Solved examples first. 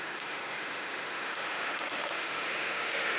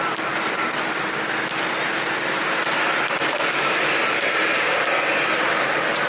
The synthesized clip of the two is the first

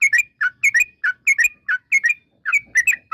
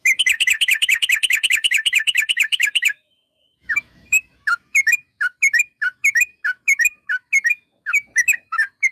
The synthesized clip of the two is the second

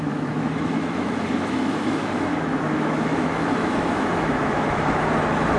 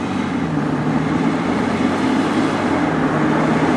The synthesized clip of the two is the first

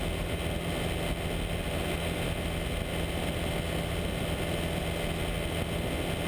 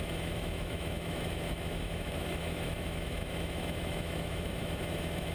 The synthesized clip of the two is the second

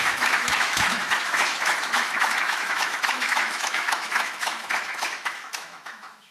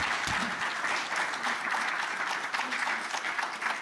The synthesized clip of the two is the first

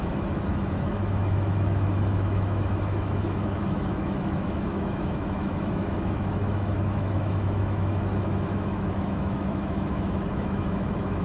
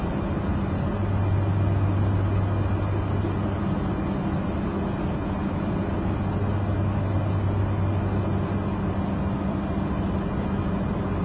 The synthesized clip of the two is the first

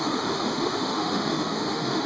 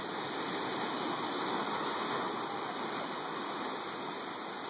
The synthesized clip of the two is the first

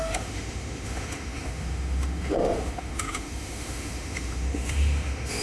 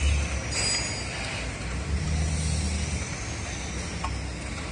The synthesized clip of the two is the first